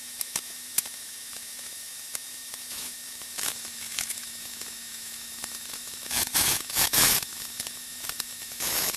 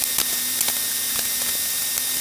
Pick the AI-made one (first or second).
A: first